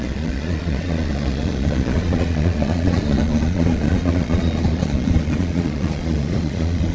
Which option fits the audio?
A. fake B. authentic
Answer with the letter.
A